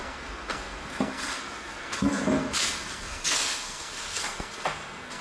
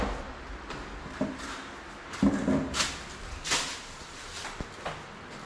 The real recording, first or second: second